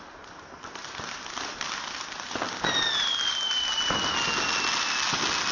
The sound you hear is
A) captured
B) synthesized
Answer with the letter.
A